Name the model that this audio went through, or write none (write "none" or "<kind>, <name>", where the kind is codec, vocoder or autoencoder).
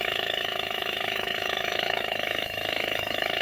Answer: autoencoder, DAC-VAE